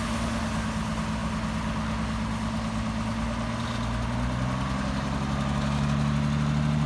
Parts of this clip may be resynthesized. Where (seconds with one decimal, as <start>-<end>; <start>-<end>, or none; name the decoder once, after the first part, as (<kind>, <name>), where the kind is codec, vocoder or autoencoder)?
none